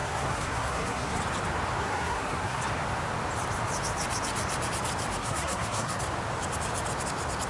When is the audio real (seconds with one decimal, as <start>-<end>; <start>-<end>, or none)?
1.2-1.8; 2.6-5.2; 6.0-7.5